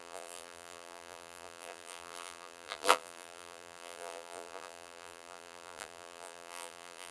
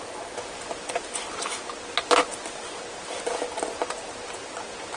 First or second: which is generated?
first